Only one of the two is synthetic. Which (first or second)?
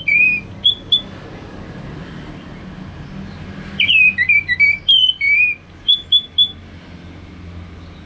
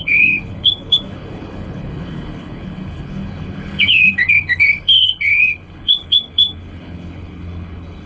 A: second